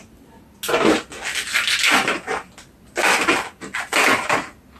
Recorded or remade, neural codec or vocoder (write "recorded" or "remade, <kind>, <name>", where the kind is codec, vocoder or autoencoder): recorded